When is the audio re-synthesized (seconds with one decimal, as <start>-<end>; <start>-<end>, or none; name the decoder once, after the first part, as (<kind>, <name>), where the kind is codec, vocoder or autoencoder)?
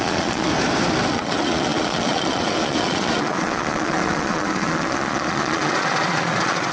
0.0-0.5 (vocoder, Vocos); 1.1-6.7